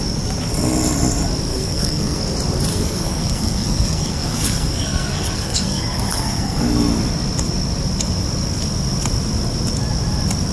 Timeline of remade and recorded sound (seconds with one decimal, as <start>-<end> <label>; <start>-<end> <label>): 0.0-1.5 recorded; 1.5-2.2 remade; 2.2-2.7 recorded; 2.7-6.6 remade; 6.6-10.5 recorded